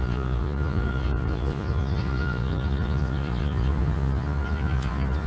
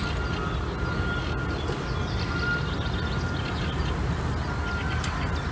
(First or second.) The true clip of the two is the second